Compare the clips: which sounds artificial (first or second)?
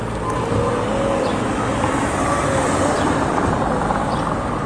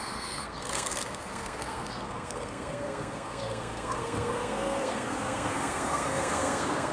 second